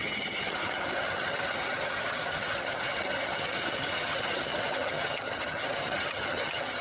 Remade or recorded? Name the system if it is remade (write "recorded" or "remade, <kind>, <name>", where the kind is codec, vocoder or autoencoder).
remade, vocoder, HiFi-GAN